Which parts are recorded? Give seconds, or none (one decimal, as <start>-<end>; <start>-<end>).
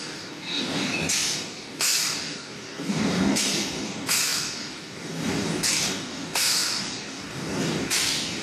none